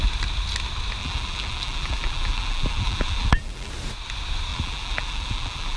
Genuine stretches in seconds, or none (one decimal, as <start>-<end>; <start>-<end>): 0.0-1.0; 3.7-4.5